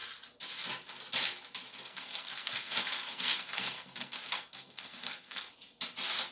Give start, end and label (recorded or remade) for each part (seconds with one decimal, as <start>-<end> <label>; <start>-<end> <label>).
0.0-1.7 recorded; 1.7-5.5 remade; 5.5-6.3 recorded